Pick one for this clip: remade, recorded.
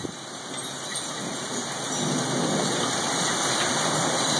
recorded